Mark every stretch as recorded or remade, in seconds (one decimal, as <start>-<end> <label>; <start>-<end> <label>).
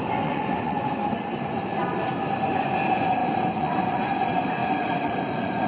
0.0-0.9 remade; 0.9-2.6 recorded; 2.6-5.7 remade